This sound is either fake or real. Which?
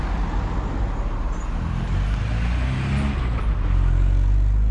real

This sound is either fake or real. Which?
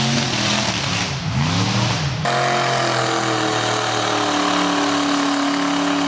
real